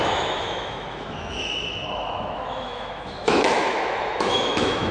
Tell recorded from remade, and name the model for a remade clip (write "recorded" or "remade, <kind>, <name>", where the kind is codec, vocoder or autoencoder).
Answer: remade, autoencoder, DAC-VAE